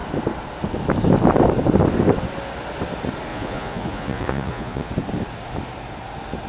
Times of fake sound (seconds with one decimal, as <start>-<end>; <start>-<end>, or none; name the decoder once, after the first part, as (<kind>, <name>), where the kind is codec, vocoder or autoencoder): 3.3-4.9 (vocoder, Vocos)